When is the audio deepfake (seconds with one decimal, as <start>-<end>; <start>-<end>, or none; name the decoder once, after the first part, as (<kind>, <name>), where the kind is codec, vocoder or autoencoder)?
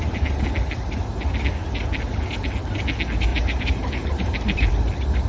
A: 3.3-4.7 (vocoder, BigVGAN v2)